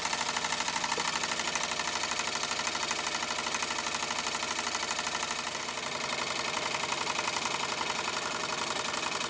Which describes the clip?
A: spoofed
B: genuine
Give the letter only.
B